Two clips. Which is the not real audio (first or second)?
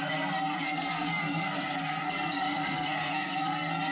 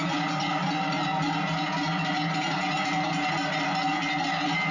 first